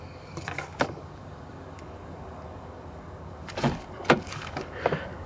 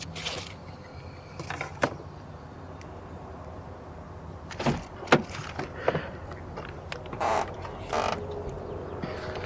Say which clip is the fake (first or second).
first